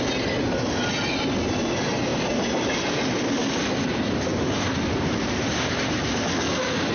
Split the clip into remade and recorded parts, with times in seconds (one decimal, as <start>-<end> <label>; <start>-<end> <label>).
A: 0.0-2.1 recorded; 2.1-3.2 remade; 3.2-4.3 recorded; 4.3-6.2 remade; 6.2-6.9 recorded